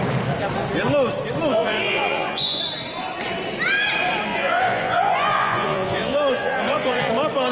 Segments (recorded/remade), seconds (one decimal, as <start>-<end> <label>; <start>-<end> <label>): 0.0-1.5 recorded; 1.5-2.6 remade; 2.6-4.3 recorded; 4.3-7.1 remade; 7.1-7.5 recorded